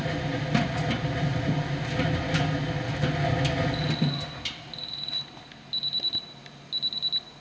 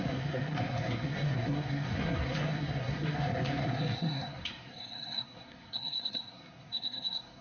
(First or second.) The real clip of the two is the first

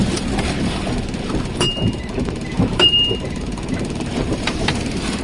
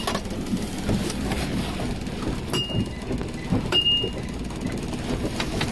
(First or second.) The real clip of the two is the second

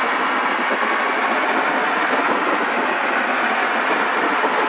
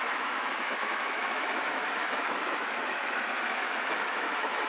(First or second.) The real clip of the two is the first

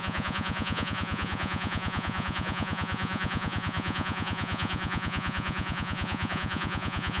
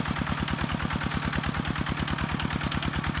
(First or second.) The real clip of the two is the second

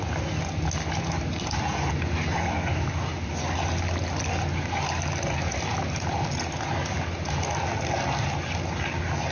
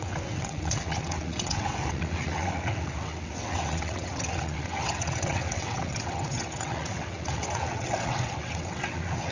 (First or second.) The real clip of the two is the first